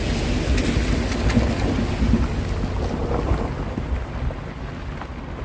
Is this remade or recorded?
recorded